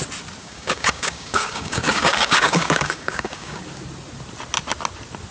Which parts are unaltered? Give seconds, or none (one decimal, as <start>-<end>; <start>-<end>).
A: 0.0-0.4; 3.6-5.3